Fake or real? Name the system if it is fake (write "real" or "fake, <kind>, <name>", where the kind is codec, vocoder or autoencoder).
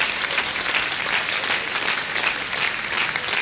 real